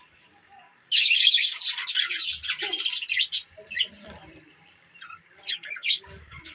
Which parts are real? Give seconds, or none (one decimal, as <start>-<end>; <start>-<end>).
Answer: 1.6-5.5